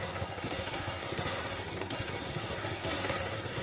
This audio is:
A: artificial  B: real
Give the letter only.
A